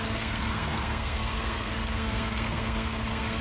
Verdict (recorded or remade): remade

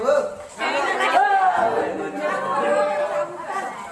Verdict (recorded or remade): recorded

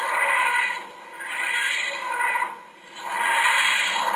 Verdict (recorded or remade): recorded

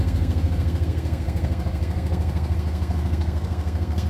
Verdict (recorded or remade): remade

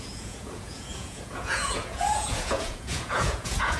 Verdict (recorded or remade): remade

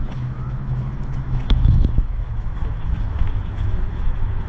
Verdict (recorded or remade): remade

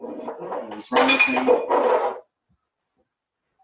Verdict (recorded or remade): recorded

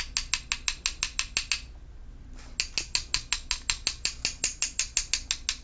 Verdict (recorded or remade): recorded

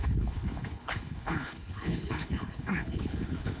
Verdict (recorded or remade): remade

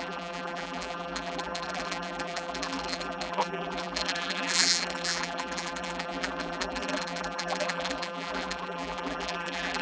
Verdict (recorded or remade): remade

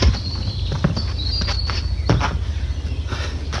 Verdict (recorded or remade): recorded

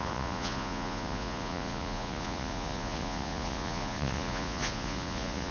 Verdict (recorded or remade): remade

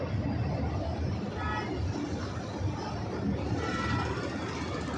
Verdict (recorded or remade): recorded